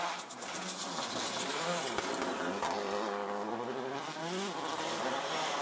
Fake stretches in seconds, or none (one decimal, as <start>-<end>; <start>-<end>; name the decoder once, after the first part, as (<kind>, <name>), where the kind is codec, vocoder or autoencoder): none